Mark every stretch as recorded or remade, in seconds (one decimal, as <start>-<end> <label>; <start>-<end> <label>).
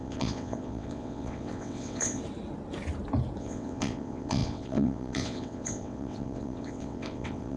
0.0-2.2 remade; 2.2-3.4 recorded; 3.4-7.6 remade